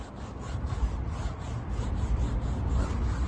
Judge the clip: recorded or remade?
recorded